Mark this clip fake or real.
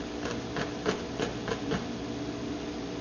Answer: real